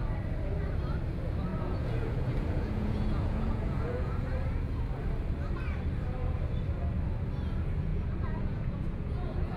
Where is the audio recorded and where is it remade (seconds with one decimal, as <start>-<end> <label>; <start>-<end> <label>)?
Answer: 0.0-1.5 recorded; 1.5-4.8 remade; 4.8-7.9 recorded; 7.9-9.6 remade